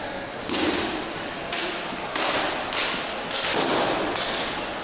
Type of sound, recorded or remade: recorded